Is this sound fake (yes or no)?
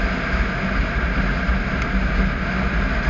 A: no